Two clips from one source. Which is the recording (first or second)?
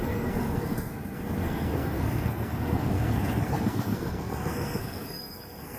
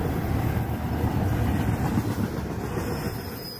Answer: second